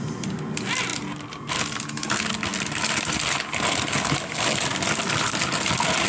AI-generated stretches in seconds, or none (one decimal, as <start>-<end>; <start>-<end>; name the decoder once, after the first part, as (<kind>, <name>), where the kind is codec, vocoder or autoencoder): none